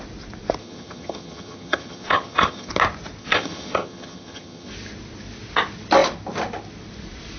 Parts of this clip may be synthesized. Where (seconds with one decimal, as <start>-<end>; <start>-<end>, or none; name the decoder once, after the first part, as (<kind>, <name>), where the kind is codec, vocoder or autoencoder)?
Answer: 0.6-2.7 (vocoder, HiFi-GAN); 3.2-4.7